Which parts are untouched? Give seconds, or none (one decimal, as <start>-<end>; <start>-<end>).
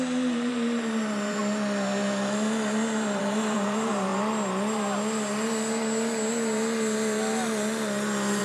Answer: 1.4-3.2; 4.1-8.4